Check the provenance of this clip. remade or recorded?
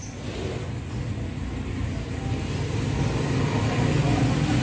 recorded